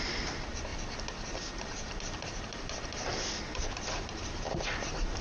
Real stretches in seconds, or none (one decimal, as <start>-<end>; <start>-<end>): 0.7-1.6; 3.1-3.7